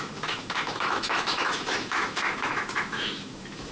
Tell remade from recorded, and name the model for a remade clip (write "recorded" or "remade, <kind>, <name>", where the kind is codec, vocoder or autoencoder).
remade, autoencoder, DAC-VAE